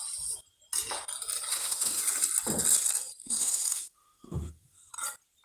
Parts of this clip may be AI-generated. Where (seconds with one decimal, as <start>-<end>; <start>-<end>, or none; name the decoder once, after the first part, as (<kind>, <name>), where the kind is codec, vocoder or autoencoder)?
1.5-2.0 (autoencoder, DAC-VAE); 3.2-4.9